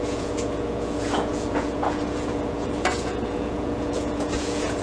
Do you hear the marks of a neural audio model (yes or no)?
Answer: yes